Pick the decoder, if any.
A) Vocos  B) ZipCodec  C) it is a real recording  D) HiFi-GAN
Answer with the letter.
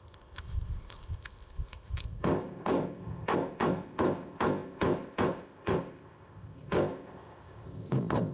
B